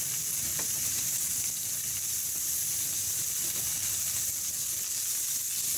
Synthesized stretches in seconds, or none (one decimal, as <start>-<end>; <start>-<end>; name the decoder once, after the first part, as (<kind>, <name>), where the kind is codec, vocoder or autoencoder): 0.5-4.0 (vocoder, BigVGAN v2)